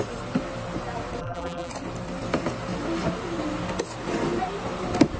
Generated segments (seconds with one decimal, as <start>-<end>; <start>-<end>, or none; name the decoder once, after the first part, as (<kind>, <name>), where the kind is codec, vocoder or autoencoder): 1.2-1.7 (vocoder, BigVGAN v2)